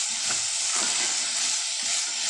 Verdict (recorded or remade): recorded